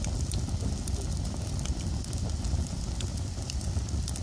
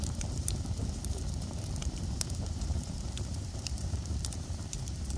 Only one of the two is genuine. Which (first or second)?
first